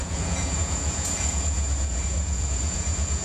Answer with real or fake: fake